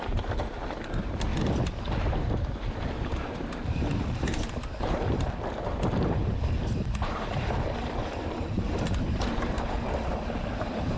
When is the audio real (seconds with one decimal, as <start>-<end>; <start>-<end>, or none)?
1.3-2.5